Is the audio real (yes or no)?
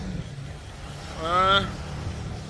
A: yes